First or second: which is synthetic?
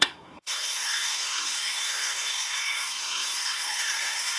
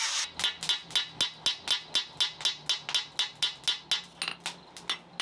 first